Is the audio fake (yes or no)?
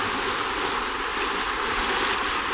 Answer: no